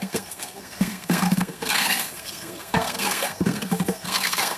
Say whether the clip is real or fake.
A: fake